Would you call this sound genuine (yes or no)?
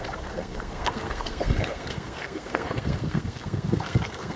no